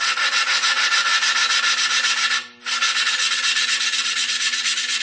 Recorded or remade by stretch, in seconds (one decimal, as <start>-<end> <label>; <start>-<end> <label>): 0.0-1.1 remade; 1.1-3.0 recorded; 3.0-5.0 remade